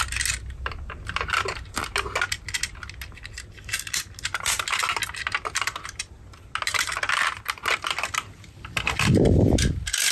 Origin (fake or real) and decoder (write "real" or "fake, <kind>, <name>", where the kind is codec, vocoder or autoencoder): real